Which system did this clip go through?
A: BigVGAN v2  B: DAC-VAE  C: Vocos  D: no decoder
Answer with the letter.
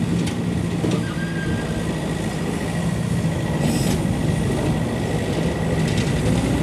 D